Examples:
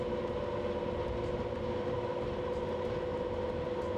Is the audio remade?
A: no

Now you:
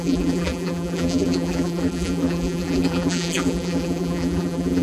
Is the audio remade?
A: yes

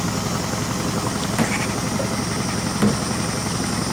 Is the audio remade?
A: no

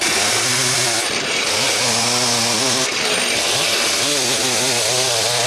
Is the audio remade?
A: no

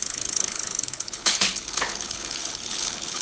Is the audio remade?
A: yes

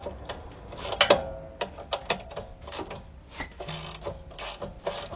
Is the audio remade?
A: no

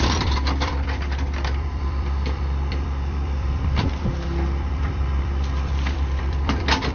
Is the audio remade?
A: yes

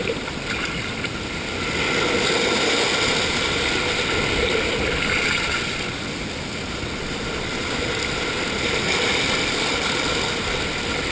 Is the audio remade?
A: no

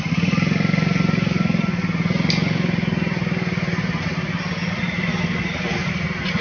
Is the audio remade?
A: no